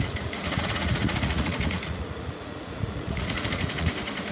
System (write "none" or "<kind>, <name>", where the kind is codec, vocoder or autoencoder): vocoder, Vocos